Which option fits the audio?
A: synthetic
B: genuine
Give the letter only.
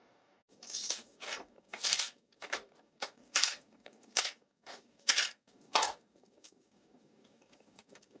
A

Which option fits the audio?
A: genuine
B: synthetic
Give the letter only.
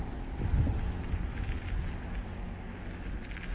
A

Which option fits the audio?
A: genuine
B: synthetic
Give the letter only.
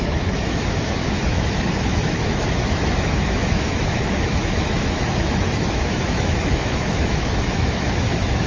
B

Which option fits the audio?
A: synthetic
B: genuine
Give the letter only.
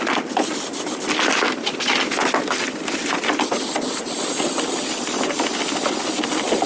B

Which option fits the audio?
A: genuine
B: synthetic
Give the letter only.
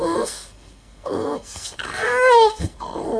B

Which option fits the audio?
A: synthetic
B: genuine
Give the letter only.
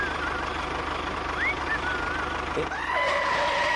B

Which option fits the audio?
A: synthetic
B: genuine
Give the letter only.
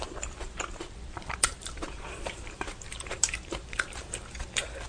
A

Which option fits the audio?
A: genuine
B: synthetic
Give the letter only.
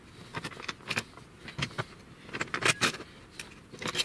A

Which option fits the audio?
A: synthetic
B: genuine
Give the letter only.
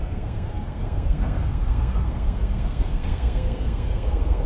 A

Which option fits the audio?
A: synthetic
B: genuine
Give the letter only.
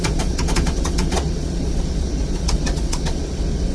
A